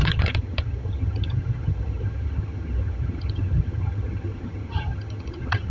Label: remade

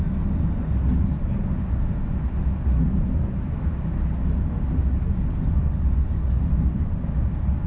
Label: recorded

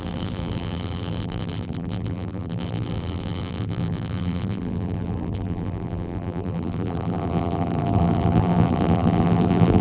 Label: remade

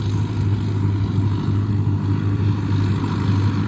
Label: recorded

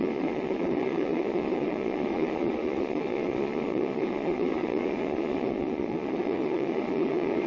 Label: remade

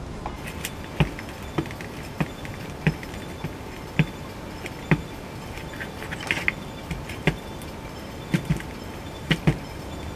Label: recorded